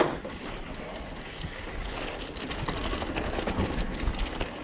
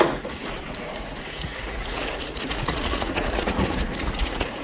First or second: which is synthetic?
second